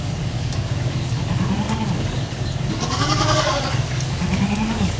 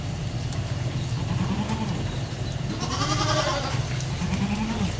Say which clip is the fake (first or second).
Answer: first